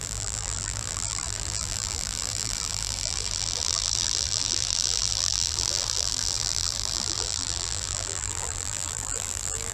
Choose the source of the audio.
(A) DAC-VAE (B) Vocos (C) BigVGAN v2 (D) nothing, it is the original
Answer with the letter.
C